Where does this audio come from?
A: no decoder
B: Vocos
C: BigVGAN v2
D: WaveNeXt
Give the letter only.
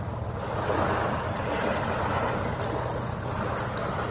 A